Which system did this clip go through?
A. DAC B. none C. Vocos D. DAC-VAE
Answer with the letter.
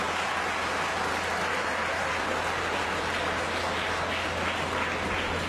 B